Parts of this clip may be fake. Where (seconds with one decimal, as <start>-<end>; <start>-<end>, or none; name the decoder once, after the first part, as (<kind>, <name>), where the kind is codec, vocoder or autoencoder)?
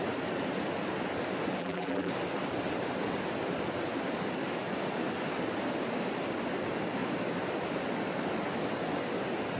1.6-2.1 (vocoder, BigVGAN v2)